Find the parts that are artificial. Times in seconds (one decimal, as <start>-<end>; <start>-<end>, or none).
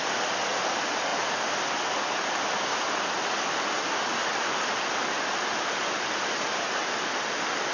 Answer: none